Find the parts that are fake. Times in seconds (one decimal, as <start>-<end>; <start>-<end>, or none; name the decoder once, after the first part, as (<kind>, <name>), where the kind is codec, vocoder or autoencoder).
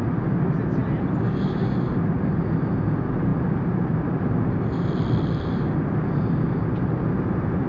none